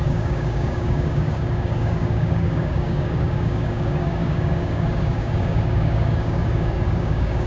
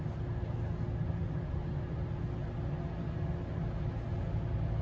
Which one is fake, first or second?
first